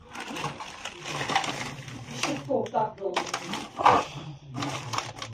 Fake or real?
real